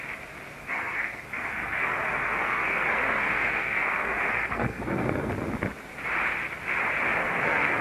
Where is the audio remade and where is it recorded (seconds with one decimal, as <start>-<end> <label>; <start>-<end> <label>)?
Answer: 0.0-0.6 recorded; 0.6-5.3 remade; 5.3-7.2 recorded; 7.2-7.8 remade